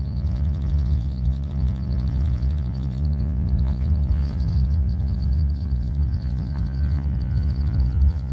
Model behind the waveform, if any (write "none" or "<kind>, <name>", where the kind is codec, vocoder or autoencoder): vocoder, Vocos